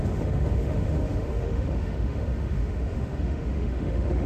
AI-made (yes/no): yes